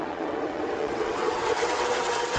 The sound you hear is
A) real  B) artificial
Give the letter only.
B